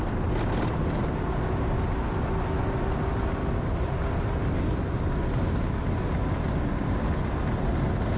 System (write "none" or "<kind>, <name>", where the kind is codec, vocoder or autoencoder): none